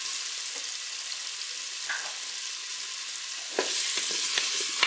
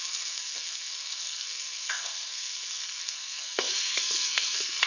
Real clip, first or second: first